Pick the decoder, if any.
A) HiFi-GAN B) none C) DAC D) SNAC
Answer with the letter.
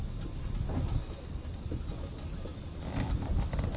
B